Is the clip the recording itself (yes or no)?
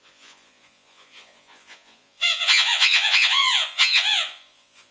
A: no